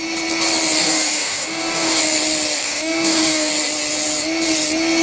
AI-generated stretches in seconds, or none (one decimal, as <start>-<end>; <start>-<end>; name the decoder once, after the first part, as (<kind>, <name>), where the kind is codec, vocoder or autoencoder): 0.8-2.0 (codec, DAC); 2.6-3.5